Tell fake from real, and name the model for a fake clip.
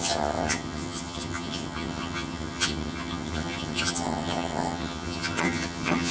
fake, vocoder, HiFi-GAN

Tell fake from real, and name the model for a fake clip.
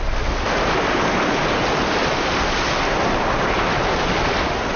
real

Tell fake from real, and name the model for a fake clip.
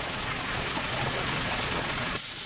fake, vocoder, Vocos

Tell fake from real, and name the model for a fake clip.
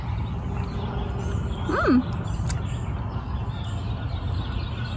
real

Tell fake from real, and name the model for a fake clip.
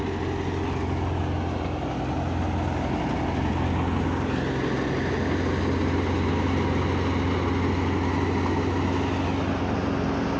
real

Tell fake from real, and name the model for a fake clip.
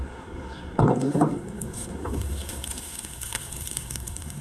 fake, codec, SNAC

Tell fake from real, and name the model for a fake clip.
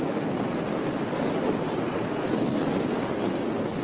real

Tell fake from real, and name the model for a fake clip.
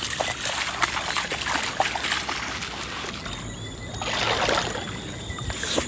real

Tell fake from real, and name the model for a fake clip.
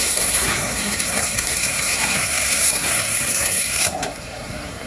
fake, codec, SNAC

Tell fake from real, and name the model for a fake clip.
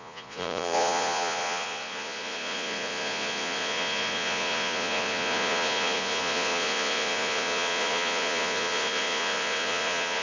fake, vocoder, Vocos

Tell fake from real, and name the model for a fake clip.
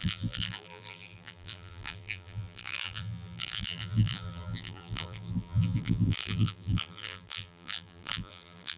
fake, vocoder, BigVGAN v2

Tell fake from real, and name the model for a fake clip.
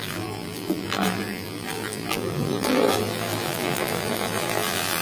fake, vocoder, BigVGAN v2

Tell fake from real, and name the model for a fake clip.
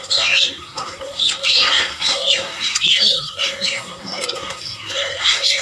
fake, codec, SNAC